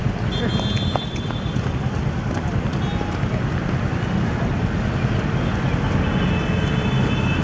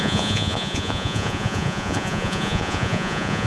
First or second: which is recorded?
first